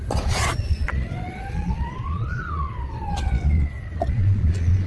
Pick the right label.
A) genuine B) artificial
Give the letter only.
B